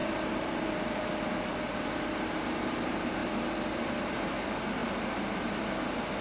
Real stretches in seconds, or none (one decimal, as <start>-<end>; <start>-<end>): 1.0-4.8; 5.8-6.2